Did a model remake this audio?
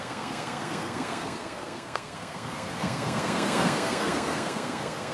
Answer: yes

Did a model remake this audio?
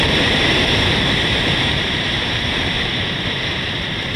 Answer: yes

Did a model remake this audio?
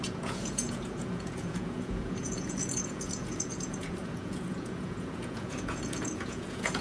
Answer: yes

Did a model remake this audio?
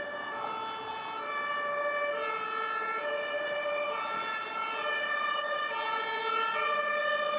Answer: no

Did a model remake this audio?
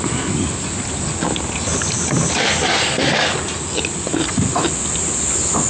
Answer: no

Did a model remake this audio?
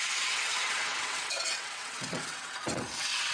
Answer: yes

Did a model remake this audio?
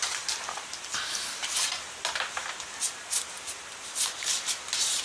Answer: no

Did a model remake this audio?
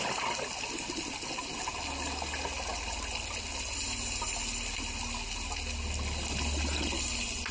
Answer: no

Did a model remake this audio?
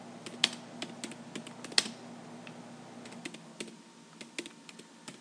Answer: no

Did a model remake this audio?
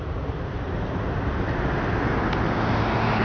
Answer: no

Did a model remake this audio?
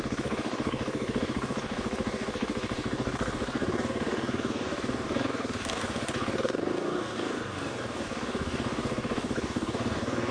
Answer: yes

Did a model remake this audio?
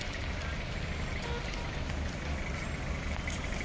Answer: no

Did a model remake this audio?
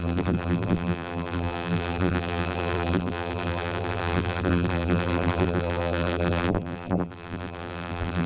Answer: yes